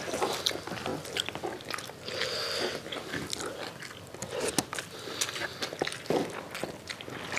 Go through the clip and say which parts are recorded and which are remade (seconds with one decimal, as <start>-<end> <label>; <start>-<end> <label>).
0.0-7.4 recorded